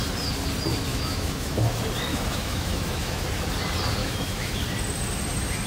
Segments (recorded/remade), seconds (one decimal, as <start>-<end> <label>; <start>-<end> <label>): 0.0-0.9 recorded; 0.9-1.7 remade; 1.7-2.1 recorded; 2.1-3.2 remade; 3.2-4.0 recorded; 4.0-4.6 remade; 4.6-5.7 recorded